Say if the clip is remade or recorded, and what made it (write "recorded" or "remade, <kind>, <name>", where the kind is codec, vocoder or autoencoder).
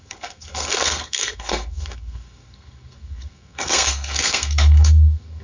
remade, codec, SNAC